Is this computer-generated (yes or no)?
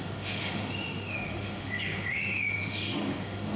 yes